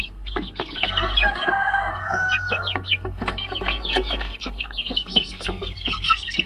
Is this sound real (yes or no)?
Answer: no